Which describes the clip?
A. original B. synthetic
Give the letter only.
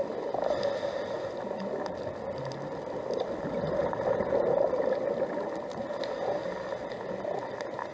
A